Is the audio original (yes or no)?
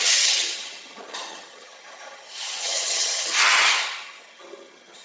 no